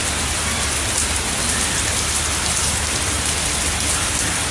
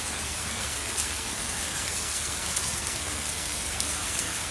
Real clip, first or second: first